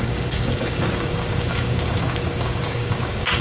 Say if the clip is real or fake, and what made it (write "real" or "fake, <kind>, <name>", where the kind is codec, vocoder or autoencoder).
fake, codec, DAC